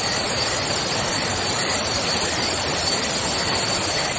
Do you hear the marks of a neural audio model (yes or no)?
no